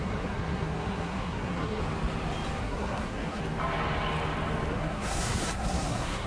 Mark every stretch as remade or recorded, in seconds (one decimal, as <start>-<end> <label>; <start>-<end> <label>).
0.0-1.8 remade; 1.8-2.6 recorded; 2.6-3.4 remade; 3.4-4.7 recorded; 4.7-6.3 remade